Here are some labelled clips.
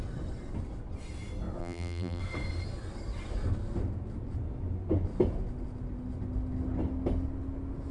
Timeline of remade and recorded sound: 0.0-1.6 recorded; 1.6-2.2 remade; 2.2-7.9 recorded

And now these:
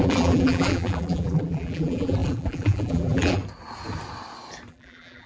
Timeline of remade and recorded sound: 0.0-3.4 remade; 3.4-4.7 recorded; 4.7-5.3 remade

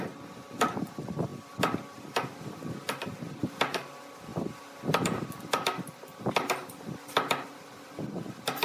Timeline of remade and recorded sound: 0.0-8.6 recorded

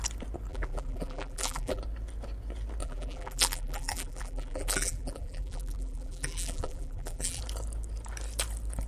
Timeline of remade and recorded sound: 0.0-0.5 recorded; 0.5-1.8 remade; 1.8-2.8 recorded; 2.8-7.4 remade; 7.4-8.9 recorded

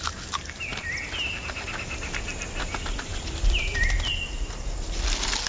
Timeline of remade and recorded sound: 0.0-5.5 recorded

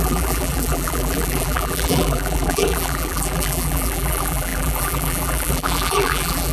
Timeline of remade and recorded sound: 0.0-6.5 remade